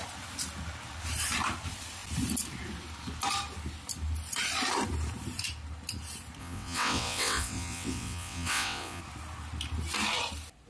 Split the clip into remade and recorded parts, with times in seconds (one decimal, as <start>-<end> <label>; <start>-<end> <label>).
0.0-6.4 recorded; 6.4-9.0 remade; 9.0-10.7 recorded